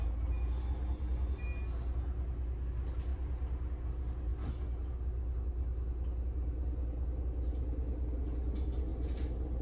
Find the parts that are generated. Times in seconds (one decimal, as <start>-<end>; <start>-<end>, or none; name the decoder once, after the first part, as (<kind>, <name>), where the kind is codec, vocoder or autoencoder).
8.9-9.6 (vocoder, BigVGAN v2)